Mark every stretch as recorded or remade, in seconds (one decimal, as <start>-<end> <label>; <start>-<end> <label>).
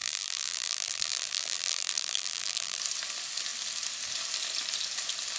0.0-2.8 remade; 2.8-5.4 recorded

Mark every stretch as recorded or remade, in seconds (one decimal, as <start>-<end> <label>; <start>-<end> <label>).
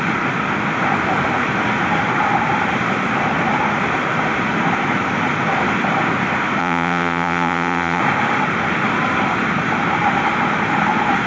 0.0-6.6 recorded; 6.6-8.0 remade; 8.0-11.3 recorded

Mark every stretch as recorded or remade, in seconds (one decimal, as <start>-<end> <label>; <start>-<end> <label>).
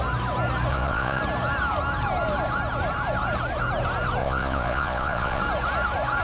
0.0-0.7 recorded; 0.7-1.2 remade; 1.2-4.2 recorded; 4.2-5.4 remade; 5.4-6.2 recorded